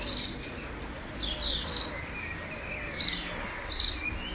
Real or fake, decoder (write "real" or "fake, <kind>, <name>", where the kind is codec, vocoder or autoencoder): real